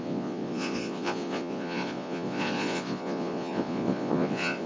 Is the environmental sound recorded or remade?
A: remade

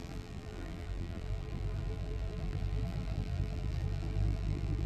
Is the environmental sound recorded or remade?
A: remade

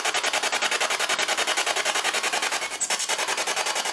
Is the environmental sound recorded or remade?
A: recorded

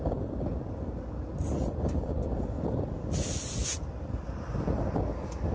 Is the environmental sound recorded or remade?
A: recorded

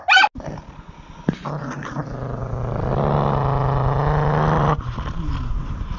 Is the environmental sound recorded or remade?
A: recorded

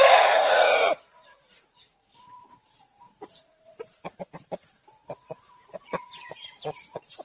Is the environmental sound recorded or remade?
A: remade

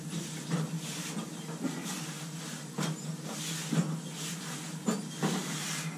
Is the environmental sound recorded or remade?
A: recorded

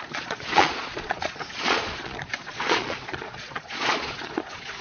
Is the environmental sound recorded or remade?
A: remade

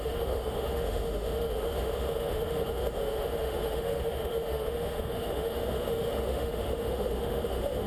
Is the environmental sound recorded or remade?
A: remade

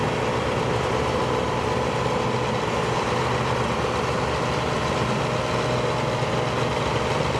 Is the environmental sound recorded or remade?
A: recorded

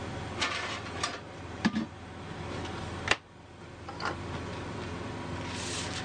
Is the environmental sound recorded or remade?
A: recorded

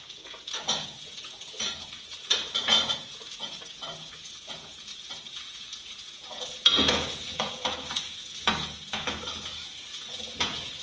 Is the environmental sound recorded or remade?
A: remade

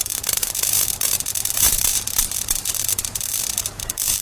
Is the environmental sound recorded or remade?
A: remade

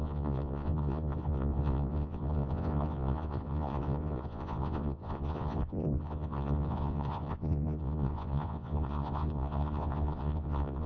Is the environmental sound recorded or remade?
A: remade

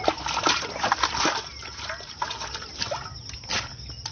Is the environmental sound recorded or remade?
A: recorded